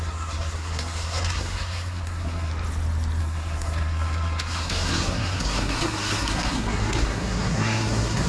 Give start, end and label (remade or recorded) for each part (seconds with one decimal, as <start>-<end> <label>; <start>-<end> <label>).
0.0-2.5 remade; 2.5-3.2 recorded; 3.2-8.3 remade